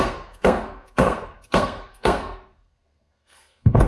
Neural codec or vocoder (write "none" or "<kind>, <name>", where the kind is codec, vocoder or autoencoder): codec, SNAC